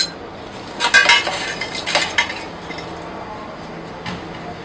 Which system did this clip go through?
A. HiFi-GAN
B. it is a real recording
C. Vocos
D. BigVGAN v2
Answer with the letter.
B